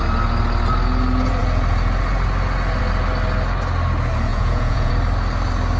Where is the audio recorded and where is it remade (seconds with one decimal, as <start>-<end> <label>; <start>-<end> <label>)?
0.0-4.3 recorded; 4.3-4.9 remade; 4.9-5.8 recorded